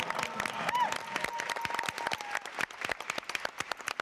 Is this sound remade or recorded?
recorded